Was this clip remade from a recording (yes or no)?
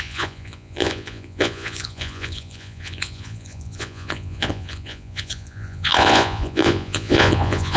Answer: yes